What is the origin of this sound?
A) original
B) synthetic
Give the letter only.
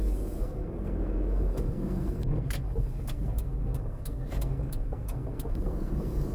B